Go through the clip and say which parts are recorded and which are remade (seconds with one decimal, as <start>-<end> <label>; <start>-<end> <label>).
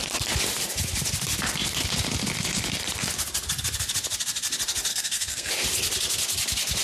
0.0-4.9 recorded; 4.9-5.5 remade; 5.5-6.8 recorded